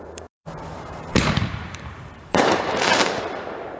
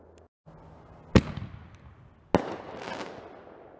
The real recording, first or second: second